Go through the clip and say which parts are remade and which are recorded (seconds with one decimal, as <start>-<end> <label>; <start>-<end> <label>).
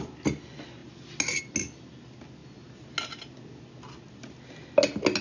0.0-5.2 recorded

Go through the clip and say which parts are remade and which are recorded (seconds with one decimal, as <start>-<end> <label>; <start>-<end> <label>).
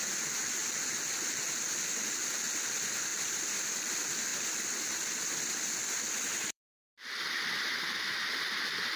0.0-3.1 recorded; 3.1-3.9 remade; 3.9-4.3 recorded; 4.3-7.9 remade; 7.9-9.0 recorded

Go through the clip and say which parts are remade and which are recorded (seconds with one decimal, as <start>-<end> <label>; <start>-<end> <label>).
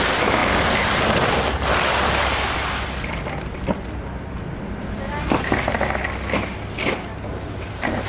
0.0-8.1 recorded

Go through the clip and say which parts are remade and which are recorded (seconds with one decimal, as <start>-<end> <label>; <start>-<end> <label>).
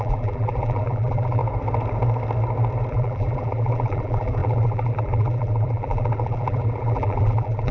0.0-1.4 remade; 1.4-2.9 recorded; 2.9-7.7 remade